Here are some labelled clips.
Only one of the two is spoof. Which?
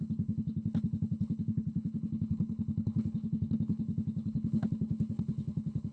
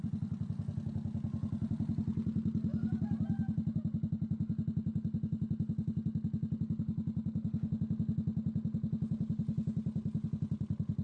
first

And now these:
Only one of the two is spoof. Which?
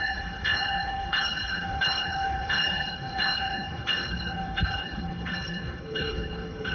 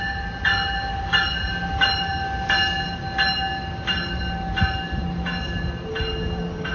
first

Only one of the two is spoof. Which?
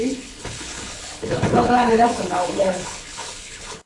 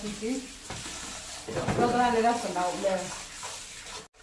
first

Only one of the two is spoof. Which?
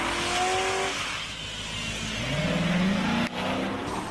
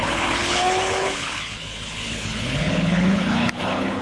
second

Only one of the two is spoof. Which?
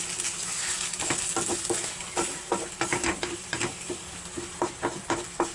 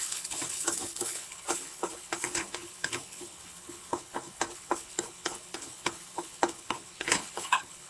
second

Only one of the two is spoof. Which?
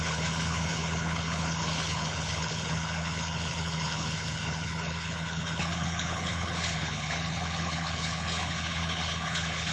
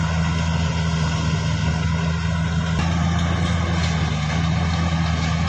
first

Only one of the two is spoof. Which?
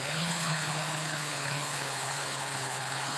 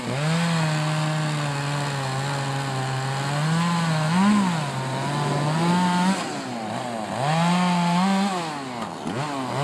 first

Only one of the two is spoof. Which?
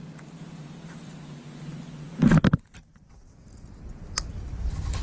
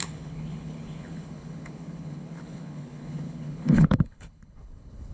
second